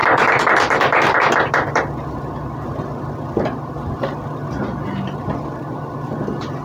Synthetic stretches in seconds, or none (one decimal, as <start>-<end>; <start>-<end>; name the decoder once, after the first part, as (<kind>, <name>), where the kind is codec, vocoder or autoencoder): 0.0-6.6 (vocoder, BigVGAN v2)